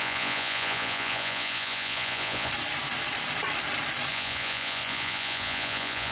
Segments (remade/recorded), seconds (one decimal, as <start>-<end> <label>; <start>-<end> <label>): 0.0-2.5 remade; 2.5-4.1 recorded; 4.1-6.1 remade